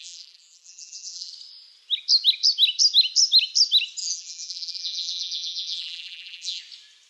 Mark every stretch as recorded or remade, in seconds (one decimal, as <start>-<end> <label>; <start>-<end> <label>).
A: 0.0-1.3 remade; 1.3-4.0 recorded; 4.0-6.6 remade; 6.6-7.1 recorded